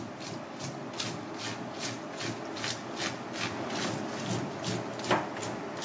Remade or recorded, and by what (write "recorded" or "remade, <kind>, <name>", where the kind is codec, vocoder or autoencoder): recorded